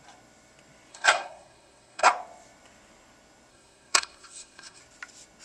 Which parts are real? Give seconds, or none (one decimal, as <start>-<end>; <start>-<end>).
0.0-0.9; 2.1-3.5; 4.8-5.4

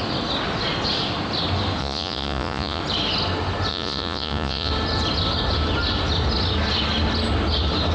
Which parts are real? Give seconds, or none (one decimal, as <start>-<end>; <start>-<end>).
0.0-1.8; 2.8-3.7; 4.7-7.9

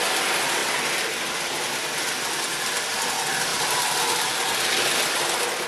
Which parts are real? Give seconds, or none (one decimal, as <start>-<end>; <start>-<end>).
0.0-3.5; 4.3-5.7

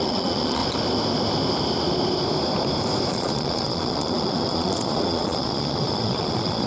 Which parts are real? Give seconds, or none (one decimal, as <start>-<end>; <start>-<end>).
0.6-3.1

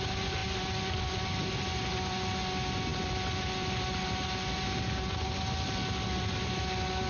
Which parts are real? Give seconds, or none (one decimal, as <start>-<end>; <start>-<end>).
0.0-7.1

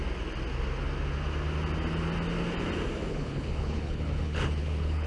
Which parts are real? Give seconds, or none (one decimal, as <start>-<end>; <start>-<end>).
0.0-3.1

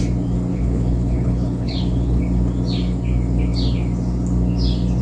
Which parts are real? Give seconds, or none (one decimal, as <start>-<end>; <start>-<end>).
0.0-0.5; 2.2-5.0

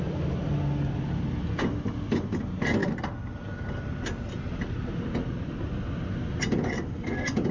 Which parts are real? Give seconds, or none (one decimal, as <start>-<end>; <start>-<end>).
0.0-7.5